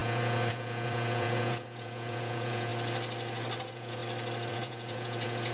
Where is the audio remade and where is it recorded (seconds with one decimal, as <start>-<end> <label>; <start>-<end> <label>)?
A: 0.0-2.7 remade; 2.7-3.6 recorded; 3.6-4.0 remade; 4.0-4.5 recorded; 4.5-5.5 remade